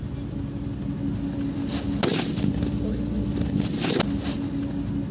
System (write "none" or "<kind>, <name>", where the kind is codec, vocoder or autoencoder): none